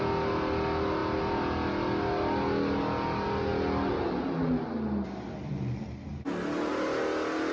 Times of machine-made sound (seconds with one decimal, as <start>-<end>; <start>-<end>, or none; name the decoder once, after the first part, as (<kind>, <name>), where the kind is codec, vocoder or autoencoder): none